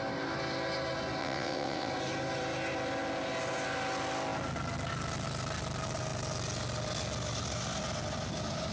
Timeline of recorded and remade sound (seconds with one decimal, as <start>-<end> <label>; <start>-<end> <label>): 0.0-1.2 recorded; 1.2-1.9 remade; 1.9-8.7 recorded